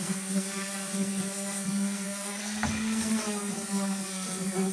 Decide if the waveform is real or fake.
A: fake